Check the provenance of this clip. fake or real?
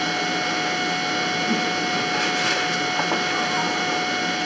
real